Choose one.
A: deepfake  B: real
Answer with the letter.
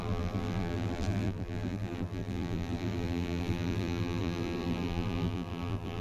A